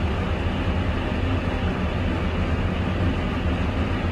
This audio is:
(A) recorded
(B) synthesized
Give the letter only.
A